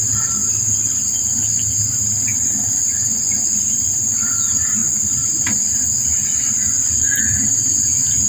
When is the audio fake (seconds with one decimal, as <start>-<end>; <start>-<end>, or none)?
none